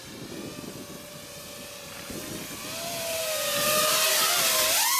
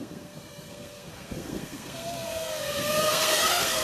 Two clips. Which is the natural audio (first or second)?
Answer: first